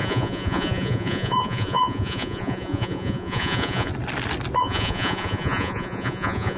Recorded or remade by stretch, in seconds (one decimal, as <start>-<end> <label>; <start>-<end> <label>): 0.0-3.9 remade; 3.9-4.6 recorded; 4.6-6.6 remade